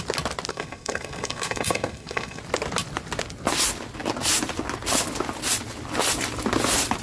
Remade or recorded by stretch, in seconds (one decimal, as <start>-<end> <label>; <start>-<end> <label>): 0.0-0.5 recorded; 0.5-2.4 remade; 2.4-7.0 recorded